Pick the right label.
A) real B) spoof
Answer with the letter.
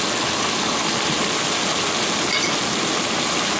A